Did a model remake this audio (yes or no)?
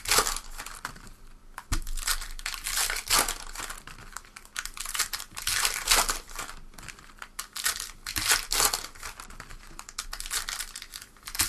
no